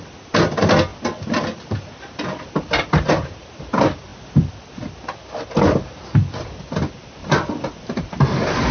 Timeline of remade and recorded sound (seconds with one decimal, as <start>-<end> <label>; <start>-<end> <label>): 0.0-7.2 recorded; 7.2-8.1 remade; 8.1-8.7 recorded